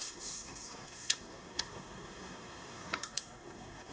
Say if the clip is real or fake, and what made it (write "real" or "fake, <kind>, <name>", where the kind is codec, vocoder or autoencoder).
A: fake, codec, SNAC